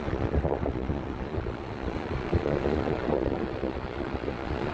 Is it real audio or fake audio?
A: fake